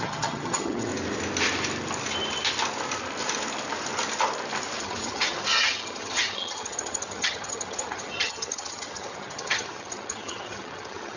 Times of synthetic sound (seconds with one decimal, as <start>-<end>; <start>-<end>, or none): 0.0-0.9; 4.8-11.2